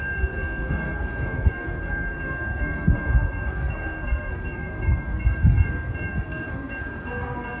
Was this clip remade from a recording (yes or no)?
yes